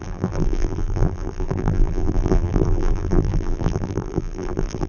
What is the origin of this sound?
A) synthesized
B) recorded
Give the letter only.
A